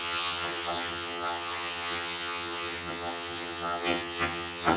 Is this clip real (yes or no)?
no